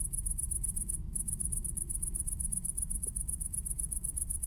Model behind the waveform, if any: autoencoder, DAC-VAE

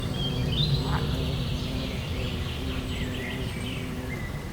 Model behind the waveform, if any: none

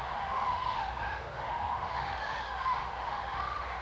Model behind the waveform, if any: autoencoder, DAC-VAE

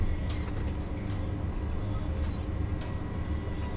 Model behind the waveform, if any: none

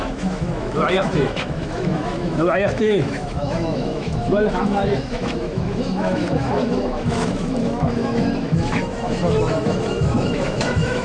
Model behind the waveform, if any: autoencoder, DAC-VAE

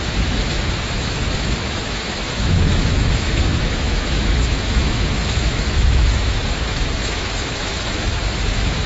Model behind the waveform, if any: autoencoder, DAC-VAE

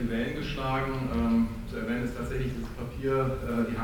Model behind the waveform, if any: none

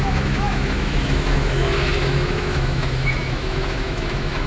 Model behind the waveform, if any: autoencoder, DAC-VAE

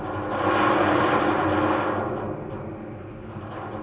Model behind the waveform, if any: none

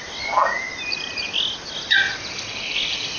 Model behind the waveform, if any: none